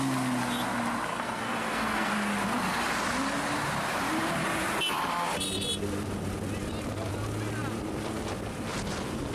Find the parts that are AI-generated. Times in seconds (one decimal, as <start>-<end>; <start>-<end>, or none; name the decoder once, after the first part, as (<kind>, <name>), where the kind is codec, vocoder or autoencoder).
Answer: 1.1-2.1 (codec, SNAC)